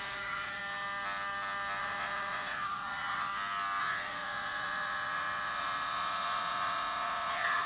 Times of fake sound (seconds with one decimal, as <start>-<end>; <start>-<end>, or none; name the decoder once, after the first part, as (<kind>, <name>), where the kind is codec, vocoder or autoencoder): 0.0-0.6 (vocoder, Vocos); 1.8-3.3; 3.8-7.7